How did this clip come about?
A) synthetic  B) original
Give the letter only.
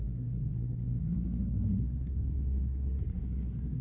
A